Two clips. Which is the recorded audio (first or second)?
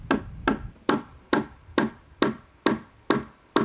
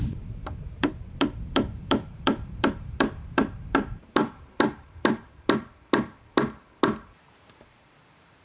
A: first